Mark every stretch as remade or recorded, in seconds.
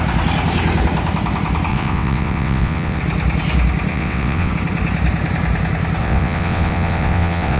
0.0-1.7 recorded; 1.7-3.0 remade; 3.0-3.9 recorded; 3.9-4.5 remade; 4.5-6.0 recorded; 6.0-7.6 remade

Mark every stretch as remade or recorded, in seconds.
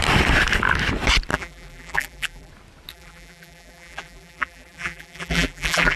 0.0-1.3 recorded; 1.3-2.5 remade; 2.5-2.9 recorded; 2.9-6.0 remade